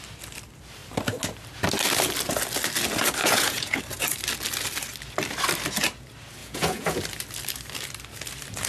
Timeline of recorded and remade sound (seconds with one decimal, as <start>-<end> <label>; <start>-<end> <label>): 0.0-3.2 recorded; 3.2-3.8 remade; 3.8-6.4 recorded; 6.4-7.0 remade; 7.0-8.7 recorded